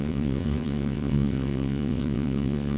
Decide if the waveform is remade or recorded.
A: remade